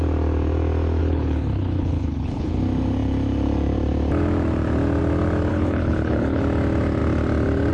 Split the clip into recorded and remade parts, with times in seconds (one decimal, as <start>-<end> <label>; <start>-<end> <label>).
0.0-1.0 recorded; 1.0-2.6 remade; 2.6-5.5 recorded; 5.5-6.4 remade; 6.4-7.7 recorded